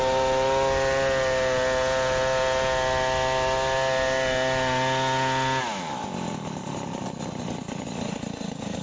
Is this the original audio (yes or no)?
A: yes